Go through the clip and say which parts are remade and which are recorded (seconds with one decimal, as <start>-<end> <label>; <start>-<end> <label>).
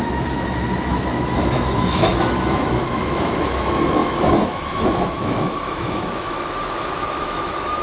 0.0-7.8 remade